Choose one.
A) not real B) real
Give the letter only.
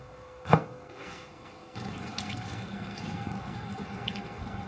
A